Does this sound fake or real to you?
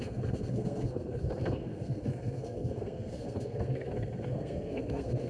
fake